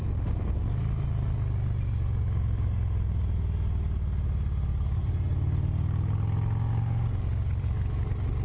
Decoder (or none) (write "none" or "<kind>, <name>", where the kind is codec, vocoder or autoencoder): none